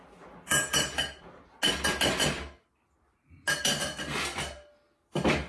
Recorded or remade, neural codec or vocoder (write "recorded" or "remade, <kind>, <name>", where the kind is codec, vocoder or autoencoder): recorded